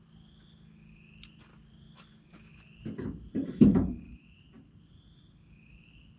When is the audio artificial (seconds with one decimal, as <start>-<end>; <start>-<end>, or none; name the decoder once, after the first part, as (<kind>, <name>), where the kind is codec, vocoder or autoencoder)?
3.3-4.1 (vocoder, BigVGAN v2)